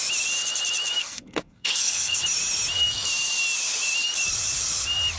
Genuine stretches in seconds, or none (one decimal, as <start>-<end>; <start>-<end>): 0.0-1.0; 2.2-5.2